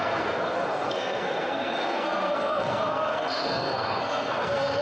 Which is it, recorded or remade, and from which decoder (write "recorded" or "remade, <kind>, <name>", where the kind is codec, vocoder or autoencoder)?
remade, codec, SNAC